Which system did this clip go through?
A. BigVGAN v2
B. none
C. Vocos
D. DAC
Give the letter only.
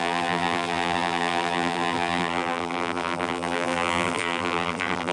A